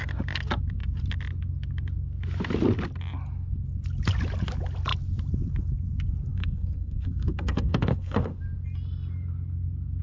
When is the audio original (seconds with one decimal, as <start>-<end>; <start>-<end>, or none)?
0.0-6.3; 8.4-10.0